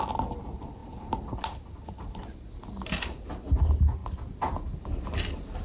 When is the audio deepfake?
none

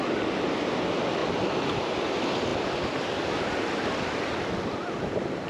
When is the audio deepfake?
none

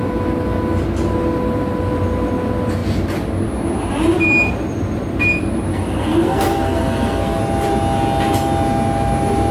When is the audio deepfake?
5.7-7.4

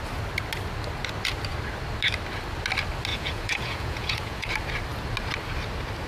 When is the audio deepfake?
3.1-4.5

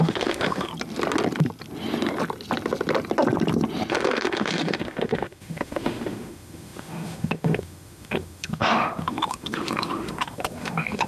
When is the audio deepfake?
0.0-0.7; 3.9-11.1

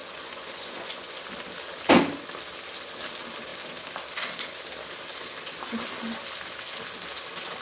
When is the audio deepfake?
0.0-1.2

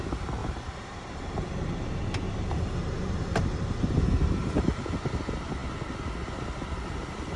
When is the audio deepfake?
0.4-4.8